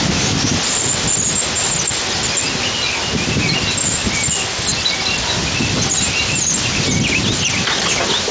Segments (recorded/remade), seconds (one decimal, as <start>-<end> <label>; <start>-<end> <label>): 0.0-8.3 recorded